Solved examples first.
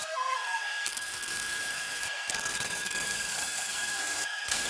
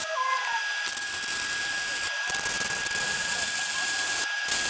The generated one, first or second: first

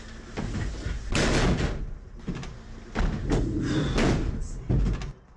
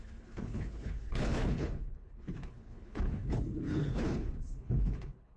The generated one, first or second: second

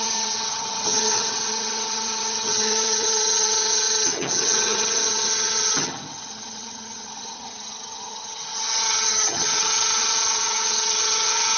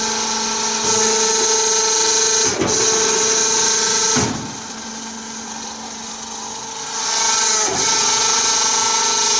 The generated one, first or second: first